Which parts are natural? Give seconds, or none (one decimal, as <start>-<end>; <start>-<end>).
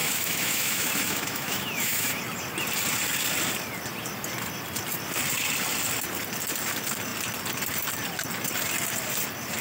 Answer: 2.2-9.6